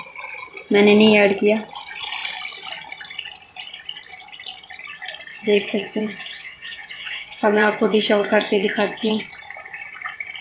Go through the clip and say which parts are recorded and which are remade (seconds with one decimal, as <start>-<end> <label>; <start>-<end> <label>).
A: 0.0-5.3 recorded; 5.3-9.2 remade; 9.2-10.4 recorded

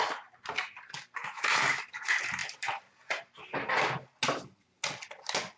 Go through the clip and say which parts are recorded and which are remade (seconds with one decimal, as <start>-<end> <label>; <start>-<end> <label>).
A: 0.0-1.2 recorded; 1.2-1.8 remade; 1.8-5.6 recorded

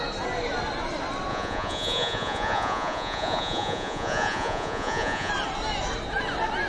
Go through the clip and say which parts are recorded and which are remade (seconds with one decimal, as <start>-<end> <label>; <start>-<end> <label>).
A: 0.0-1.3 recorded; 1.3-5.3 remade; 5.3-6.7 recorded

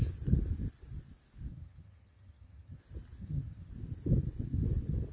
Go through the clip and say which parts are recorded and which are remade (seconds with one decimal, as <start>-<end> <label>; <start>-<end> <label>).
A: 0.0-1.5 recorded; 1.5-2.8 remade; 2.8-3.2 recorded; 3.2-3.7 remade; 3.7-5.1 recorded